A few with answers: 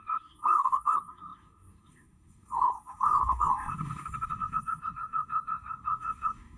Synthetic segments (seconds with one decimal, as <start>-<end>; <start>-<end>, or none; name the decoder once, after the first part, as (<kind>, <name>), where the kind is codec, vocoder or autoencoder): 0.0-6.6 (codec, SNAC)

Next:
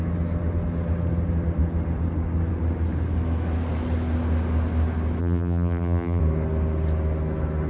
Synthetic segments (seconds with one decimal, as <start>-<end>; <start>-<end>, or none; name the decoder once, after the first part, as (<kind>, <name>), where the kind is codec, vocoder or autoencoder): 5.2-6.2 (vocoder, BigVGAN v2)

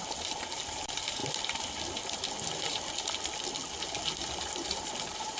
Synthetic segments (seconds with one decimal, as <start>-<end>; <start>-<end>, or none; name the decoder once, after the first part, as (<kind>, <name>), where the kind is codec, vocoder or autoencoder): 0.0-1.2 (vocoder, BigVGAN v2); 4.4-5.4